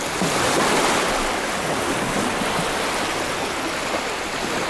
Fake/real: real